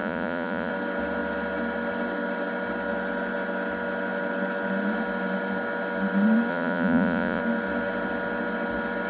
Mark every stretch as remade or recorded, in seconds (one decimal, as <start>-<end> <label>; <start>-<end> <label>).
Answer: 0.0-0.7 remade; 0.7-6.5 recorded; 6.5-7.4 remade; 7.4-9.1 recorded